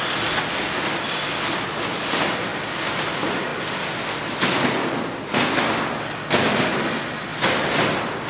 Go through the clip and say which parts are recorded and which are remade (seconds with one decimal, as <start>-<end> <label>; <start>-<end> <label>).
0.0-2.5 recorded; 2.5-3.1 remade; 3.1-7.3 recorded; 7.3-8.3 remade